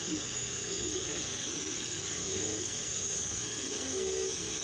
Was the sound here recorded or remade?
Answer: remade